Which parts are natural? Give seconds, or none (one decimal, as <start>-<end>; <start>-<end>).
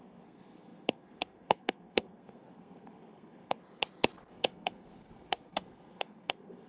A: 3.6-4.3